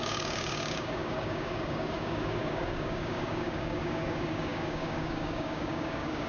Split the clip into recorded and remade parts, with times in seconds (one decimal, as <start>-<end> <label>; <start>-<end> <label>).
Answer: 0.0-6.3 remade